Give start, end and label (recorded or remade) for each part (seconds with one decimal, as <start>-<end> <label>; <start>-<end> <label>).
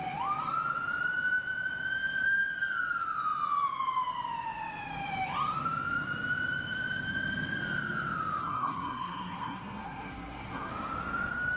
0.0-8.4 recorded; 8.4-10.7 remade; 10.7-11.6 recorded